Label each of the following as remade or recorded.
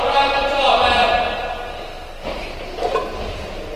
recorded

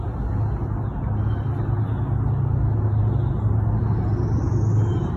recorded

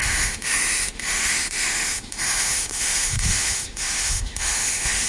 remade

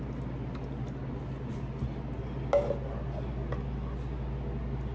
recorded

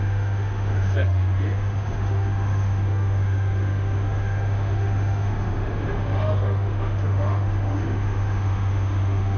remade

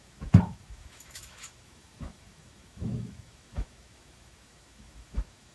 remade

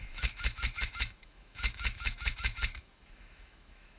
remade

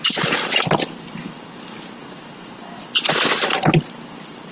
recorded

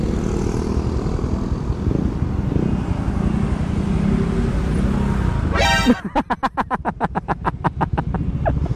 recorded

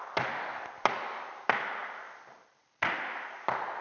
recorded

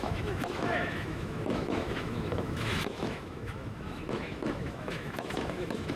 remade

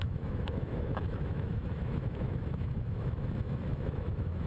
remade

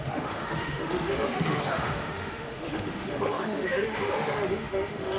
remade